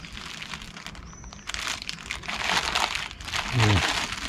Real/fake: real